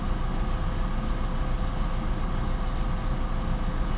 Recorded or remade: recorded